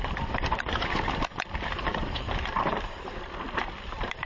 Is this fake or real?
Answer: fake